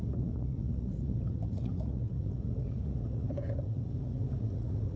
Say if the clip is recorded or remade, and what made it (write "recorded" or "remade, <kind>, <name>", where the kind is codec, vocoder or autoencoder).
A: remade, vocoder, Vocos